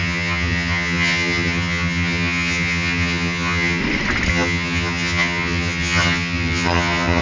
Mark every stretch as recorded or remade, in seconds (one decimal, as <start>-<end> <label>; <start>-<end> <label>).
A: 0.0-3.8 remade; 3.8-4.3 recorded; 4.3-7.2 remade